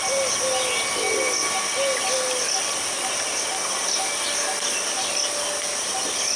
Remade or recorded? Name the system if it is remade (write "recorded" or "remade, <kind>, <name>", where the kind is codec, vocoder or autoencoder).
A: recorded